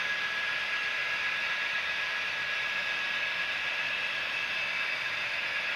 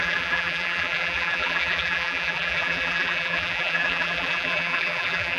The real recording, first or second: first